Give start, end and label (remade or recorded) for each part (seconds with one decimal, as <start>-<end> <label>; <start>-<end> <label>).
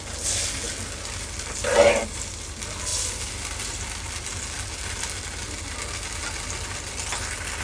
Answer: 0.0-7.6 recorded